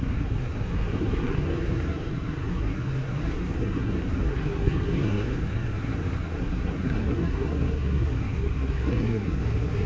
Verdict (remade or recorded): remade